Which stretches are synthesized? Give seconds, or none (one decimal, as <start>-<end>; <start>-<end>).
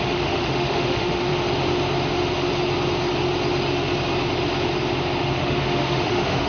0.0-1.3; 5.2-6.5